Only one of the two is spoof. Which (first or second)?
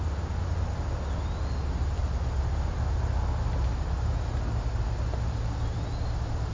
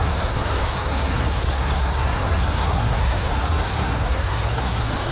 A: second